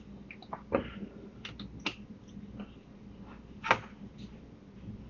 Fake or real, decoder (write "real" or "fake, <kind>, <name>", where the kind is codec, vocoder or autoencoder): real